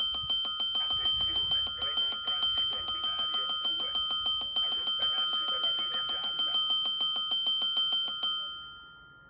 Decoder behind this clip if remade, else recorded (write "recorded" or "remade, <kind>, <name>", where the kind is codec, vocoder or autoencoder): recorded